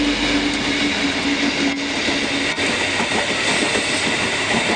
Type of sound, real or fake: real